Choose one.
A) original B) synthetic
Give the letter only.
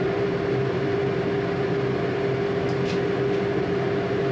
A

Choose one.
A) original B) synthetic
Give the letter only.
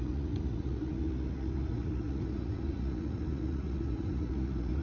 B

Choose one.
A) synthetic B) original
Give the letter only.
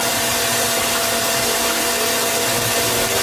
B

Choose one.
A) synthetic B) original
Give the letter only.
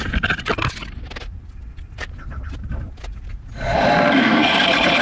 B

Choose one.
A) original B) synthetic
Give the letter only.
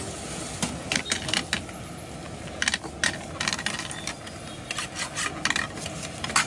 A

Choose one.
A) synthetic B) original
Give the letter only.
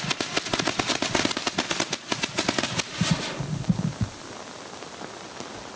B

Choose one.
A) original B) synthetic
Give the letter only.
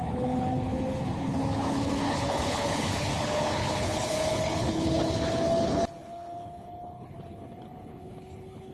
B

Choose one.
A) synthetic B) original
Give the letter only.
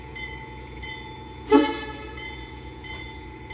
A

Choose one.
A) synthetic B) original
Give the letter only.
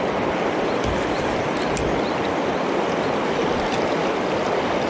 B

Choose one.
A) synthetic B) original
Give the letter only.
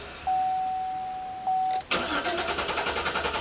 B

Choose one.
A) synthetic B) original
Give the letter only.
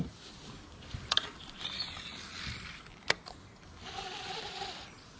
B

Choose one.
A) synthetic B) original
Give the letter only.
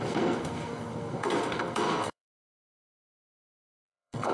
A